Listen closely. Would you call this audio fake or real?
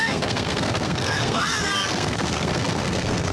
fake